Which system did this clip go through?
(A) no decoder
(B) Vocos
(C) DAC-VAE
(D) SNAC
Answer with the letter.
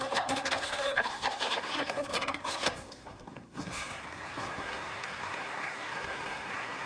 D